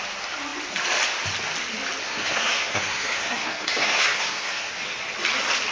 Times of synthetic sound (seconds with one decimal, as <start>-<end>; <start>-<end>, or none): 2.0-4.7